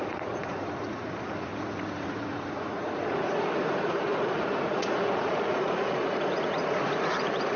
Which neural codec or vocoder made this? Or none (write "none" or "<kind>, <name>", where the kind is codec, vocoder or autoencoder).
vocoder, Vocos